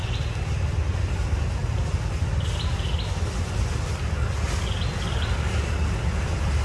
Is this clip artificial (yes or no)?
no